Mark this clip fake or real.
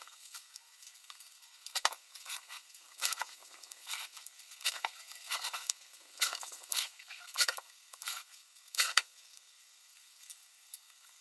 fake